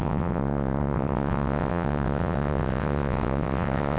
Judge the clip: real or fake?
fake